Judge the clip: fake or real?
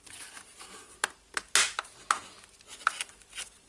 real